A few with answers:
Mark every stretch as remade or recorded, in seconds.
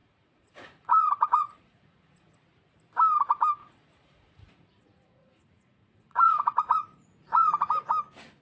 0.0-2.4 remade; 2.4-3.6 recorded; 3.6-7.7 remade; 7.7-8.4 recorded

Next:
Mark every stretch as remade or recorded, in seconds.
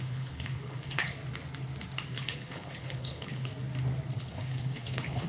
0.0-1.2 remade; 1.2-2.1 recorded; 2.1-3.5 remade; 3.5-4.2 recorded; 4.2-5.3 remade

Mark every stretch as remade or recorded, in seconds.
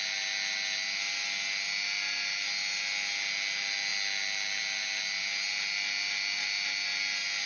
0.0-7.5 recorded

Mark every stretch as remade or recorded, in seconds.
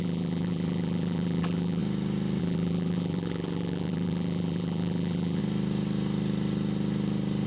0.0-1.8 remade; 1.8-2.4 recorded; 2.4-5.4 remade; 5.4-7.5 recorded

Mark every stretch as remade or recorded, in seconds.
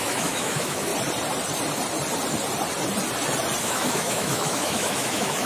0.0-0.9 remade; 0.9-3.6 recorded; 3.6-5.5 remade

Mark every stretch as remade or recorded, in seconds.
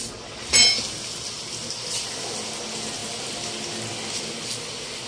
0.0-5.1 recorded